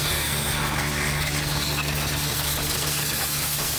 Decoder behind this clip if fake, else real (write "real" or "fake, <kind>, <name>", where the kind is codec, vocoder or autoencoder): fake, codec, SNAC